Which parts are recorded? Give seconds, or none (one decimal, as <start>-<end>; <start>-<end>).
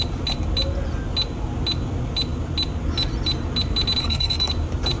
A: 0.0-4.0; 4.5-5.0